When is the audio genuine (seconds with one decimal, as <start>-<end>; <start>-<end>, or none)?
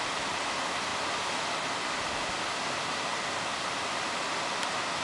0.0-5.0